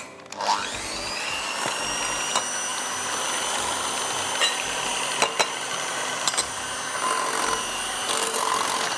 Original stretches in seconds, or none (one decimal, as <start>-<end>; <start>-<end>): 0.0-0.6; 1.8-4.4; 6.1-9.0